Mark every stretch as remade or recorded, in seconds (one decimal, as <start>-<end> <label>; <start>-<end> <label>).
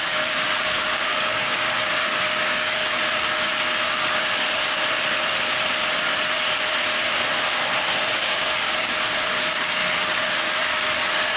0.0-2.8 remade; 2.8-8.0 recorded; 8.0-9.8 remade; 9.8-11.4 recorded